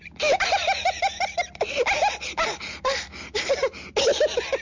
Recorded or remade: recorded